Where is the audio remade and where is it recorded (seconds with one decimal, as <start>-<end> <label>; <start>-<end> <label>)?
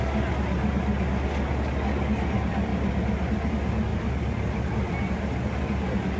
0.0-3.9 recorded; 3.9-5.1 remade; 5.1-6.2 recorded